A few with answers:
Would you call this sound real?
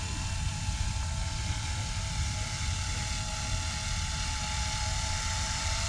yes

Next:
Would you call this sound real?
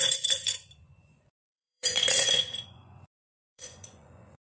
no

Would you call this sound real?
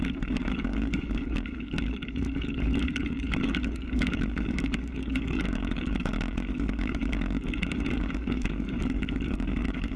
no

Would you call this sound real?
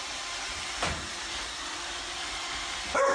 no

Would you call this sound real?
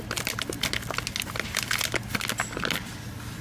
yes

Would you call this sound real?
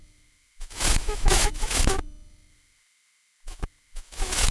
no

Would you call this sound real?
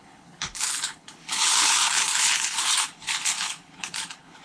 no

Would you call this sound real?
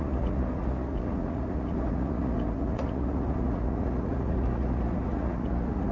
no